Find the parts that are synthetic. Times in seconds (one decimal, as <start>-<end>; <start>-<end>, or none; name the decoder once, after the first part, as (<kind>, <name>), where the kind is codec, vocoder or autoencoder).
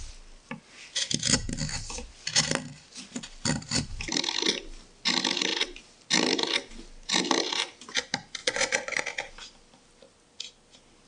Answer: 8.4-9.0 (vocoder, Vocos)